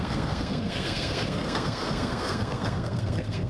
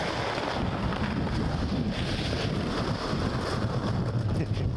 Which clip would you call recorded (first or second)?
second